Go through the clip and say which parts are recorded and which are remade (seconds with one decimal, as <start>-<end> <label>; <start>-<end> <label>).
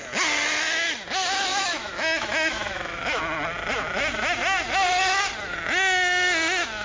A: 0.0-1.5 recorded; 1.5-3.2 remade; 3.2-6.8 recorded